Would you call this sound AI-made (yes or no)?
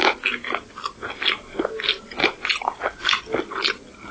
no